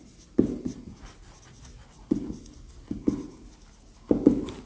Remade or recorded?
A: recorded